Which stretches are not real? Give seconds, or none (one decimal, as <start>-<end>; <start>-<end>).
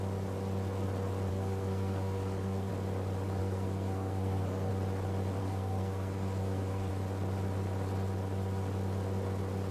1.3-2.7; 3.4-4.7; 5.4-6.9